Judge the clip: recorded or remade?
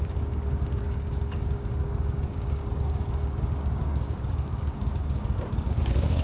remade